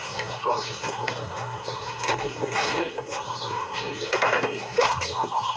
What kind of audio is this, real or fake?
fake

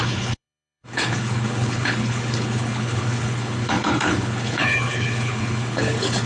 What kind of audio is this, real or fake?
fake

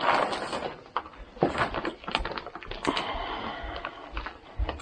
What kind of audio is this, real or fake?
real